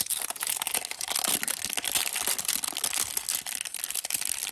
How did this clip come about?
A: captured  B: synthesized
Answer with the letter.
A